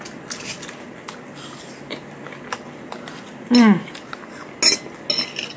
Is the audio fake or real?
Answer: real